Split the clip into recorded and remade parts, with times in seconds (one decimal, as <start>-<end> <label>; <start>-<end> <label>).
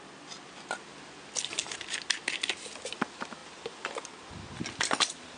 0.0-3.4 recorded; 3.4-4.2 remade; 4.2-5.4 recorded